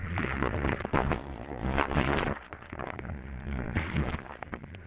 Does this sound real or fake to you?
fake